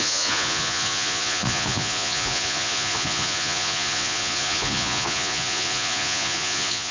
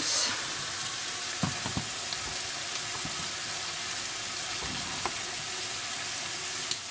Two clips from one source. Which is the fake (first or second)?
first